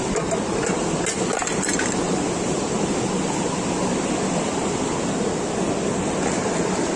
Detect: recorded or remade recorded